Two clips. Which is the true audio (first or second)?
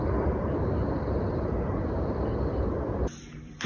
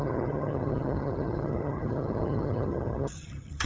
first